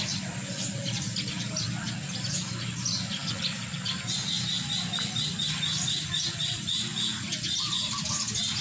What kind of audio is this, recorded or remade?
recorded